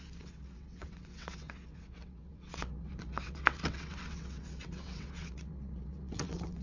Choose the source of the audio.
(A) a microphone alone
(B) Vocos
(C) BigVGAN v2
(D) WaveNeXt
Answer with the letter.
D